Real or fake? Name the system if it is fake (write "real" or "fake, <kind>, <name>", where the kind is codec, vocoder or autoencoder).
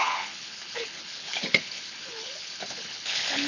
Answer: fake, codec, HILCodec